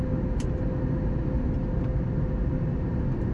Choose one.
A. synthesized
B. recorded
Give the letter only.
B